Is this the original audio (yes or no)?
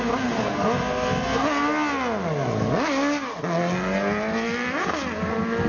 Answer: yes